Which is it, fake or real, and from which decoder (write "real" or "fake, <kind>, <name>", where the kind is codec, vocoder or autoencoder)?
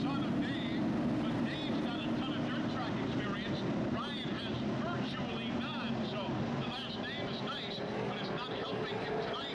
real